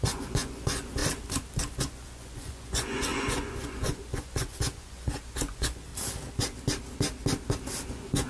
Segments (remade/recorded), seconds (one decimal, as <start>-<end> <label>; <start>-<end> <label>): 0.0-1.0 remade; 1.0-1.7 recorded; 1.7-5.9 remade; 5.9-7.9 recorded; 7.9-8.3 remade